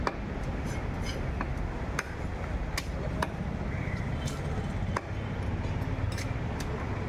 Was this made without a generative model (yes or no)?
yes